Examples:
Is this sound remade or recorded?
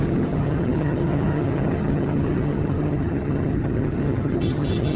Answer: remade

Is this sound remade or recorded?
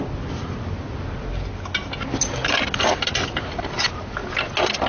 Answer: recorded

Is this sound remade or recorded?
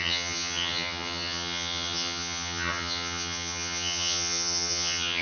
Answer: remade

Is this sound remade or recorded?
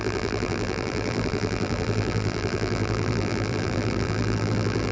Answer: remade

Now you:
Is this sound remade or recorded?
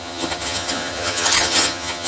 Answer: remade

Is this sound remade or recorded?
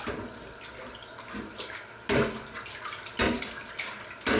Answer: recorded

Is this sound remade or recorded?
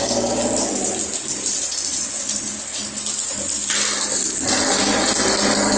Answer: recorded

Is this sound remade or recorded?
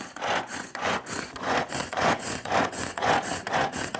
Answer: remade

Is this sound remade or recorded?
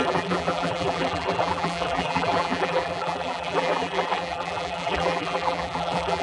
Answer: remade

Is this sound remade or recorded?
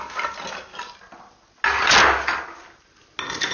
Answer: recorded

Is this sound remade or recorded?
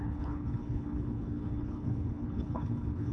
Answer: remade